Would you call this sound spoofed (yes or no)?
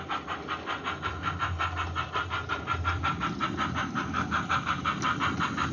no